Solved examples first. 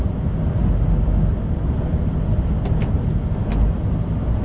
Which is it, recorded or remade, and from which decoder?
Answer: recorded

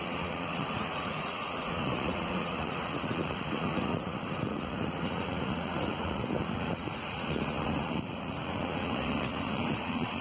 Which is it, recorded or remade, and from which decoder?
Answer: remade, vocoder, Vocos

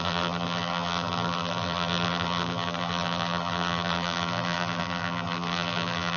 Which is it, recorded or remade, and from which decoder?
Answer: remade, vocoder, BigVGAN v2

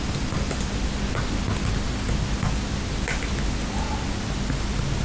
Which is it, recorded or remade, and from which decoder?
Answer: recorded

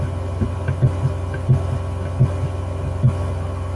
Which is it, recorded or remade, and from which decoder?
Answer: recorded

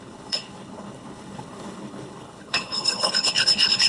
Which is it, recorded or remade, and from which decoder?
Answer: remade, codec, HILCodec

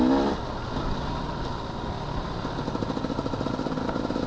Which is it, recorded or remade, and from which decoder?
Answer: recorded